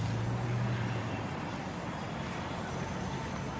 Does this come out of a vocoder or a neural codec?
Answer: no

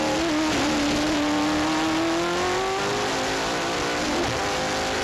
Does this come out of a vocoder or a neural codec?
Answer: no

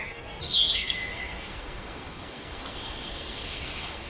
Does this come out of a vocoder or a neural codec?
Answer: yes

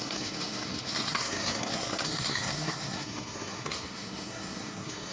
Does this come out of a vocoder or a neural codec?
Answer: yes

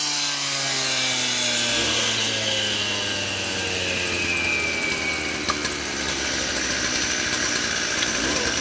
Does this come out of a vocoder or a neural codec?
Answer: no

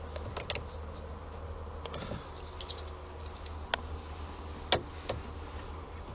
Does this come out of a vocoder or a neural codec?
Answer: no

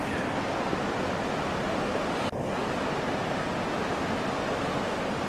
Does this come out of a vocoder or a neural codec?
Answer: no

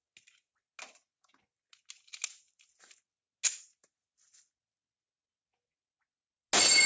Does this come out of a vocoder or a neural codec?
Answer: no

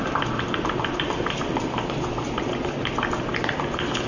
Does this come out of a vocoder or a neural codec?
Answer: no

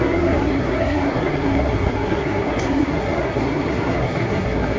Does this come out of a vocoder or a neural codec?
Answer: yes